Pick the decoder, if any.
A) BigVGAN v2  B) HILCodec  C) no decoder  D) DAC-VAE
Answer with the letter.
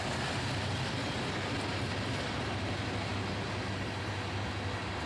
C